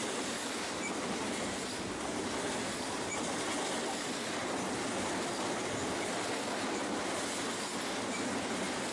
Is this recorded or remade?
recorded